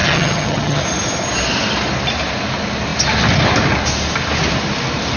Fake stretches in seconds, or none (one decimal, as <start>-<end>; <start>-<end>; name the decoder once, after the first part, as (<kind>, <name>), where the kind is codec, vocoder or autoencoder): 0.0-0.8 (vocoder, HiFi-GAN)